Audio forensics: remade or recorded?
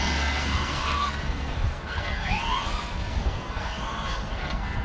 remade